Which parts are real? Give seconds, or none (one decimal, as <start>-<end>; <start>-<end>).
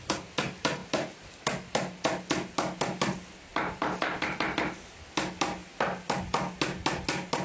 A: 0.0-0.8; 1.3-3.5; 4.9-7.4